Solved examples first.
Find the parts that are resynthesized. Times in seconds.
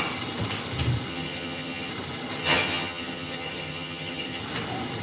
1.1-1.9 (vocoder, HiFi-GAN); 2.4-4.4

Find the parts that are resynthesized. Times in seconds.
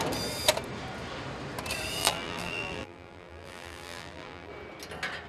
2.0-4.5 (vocoder, BigVGAN v2)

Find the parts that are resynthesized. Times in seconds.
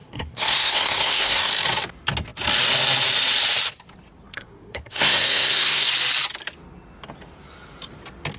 0.0-1.5 (codec, SNAC); 4.3-5.9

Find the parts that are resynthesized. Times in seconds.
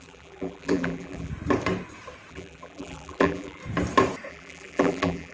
0.0-1.3 (vocoder, BigVGAN v2); 2.3-3.6; 4.3-5.3